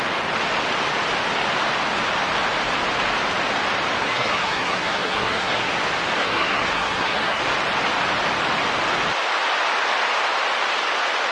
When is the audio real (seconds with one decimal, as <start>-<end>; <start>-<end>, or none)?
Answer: 0.0-4.0; 5.7-6.2; 7.4-11.3